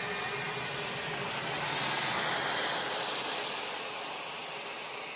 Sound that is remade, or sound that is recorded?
recorded